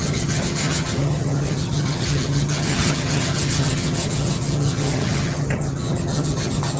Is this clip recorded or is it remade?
remade